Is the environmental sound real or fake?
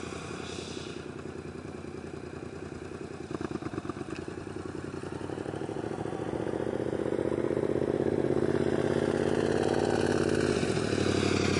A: real